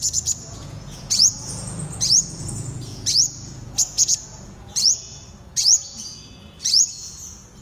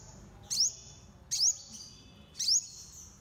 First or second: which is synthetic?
first